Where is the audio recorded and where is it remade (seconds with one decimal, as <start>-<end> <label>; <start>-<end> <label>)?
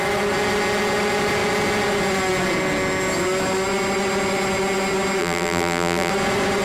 0.0-5.2 recorded; 5.2-6.1 remade; 6.1-6.6 recorded